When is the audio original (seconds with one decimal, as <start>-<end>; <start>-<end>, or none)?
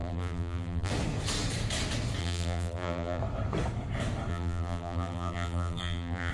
0.9-2.2; 3.2-4.3